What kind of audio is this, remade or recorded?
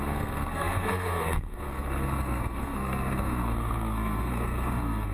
remade